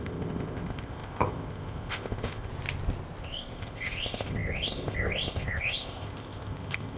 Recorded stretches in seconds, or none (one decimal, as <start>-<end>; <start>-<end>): 2.5-3.2